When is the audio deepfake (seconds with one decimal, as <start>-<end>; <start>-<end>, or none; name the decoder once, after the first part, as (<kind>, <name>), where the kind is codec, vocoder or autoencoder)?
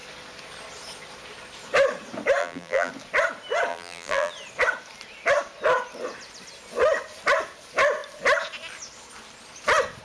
2.4-2.9 (vocoder, BigVGAN v2); 3.7-4.3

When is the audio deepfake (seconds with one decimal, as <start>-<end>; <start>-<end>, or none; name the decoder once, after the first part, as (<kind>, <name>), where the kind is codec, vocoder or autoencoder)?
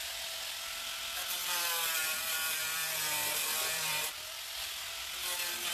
1.4-4.8 (vocoder, BigVGAN v2)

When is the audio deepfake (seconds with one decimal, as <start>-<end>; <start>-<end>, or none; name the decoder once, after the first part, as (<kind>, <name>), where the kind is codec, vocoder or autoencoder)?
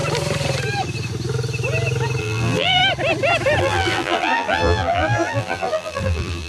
2.2-2.8 (vocoder, BigVGAN v2); 3.6-6.5